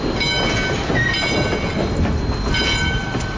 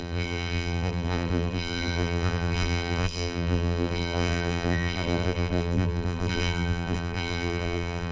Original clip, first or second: first